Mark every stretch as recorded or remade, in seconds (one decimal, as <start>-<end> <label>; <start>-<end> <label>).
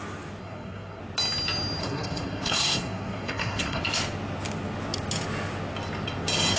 0.0-0.4 recorded; 0.4-1.0 remade; 1.0-1.8 recorded; 1.8-3.8 remade; 3.8-6.6 recorded